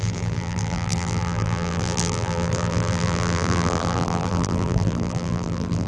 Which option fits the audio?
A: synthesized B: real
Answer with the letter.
A